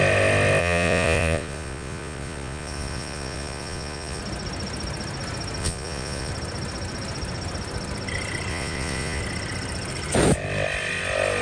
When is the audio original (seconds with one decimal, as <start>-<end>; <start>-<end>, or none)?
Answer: 0.0-0.6; 4.2-5.6; 6.3-8.5; 9.2-11.4